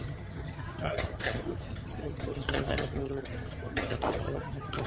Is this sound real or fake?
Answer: fake